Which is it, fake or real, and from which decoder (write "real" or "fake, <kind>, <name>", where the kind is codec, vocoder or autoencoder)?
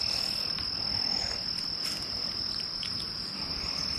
real